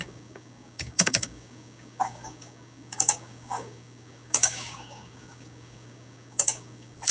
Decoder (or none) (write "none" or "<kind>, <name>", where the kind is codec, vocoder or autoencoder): codec, DAC